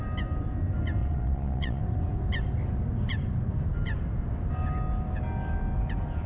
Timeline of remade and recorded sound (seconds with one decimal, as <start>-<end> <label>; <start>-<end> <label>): 0.0-1.0 recorded; 1.0-1.8 remade; 1.8-6.3 recorded

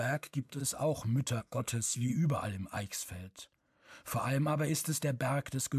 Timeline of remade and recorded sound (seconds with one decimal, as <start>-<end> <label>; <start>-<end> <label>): 0.0-0.6 remade; 0.6-1.4 recorded; 1.4-2.1 remade; 2.1-5.8 recorded

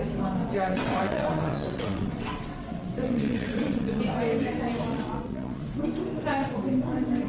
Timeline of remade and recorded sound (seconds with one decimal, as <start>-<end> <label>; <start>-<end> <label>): 0.0-0.4 recorded; 0.4-4.0 remade; 4.0-4.9 recorded; 4.9-5.8 remade; 5.8-7.3 recorded

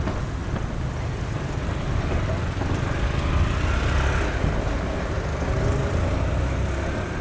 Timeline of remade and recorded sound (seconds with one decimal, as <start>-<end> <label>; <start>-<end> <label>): 0.0-5.3 recorded; 5.3-5.9 remade; 5.9-7.2 recorded

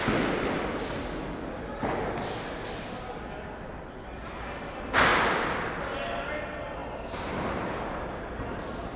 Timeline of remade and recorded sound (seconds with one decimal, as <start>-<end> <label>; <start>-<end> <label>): 0.0-9.0 recorded

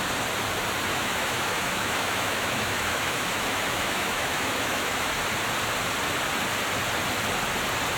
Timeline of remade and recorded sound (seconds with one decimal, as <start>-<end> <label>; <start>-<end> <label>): 0.0-0.9 recorded; 0.9-5.1 remade; 5.1-8.0 recorded